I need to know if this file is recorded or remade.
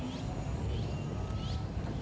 recorded